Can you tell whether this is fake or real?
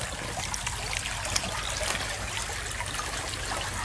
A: real